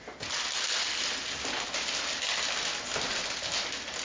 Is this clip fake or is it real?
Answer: real